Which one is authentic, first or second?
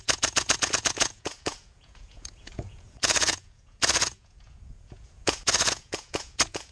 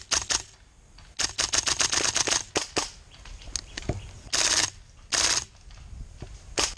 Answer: second